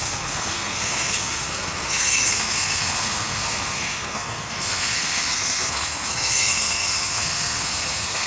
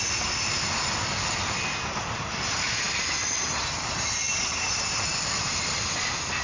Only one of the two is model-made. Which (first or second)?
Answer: first